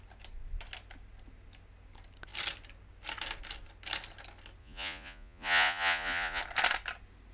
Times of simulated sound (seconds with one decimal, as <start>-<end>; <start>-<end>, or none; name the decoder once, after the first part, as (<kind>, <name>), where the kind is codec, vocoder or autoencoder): 4.6-6.4 (vocoder, Vocos)